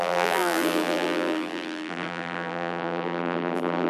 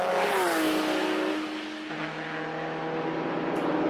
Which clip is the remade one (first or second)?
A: first